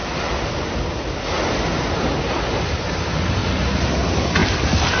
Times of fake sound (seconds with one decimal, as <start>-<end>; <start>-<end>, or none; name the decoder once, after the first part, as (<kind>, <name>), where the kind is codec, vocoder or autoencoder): 3.4-3.9 (vocoder, BigVGAN v2)